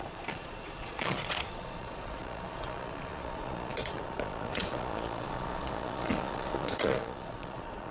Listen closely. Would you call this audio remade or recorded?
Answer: remade